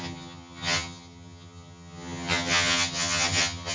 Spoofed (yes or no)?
yes